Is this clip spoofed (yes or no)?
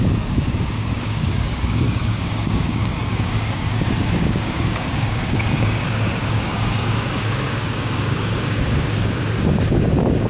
yes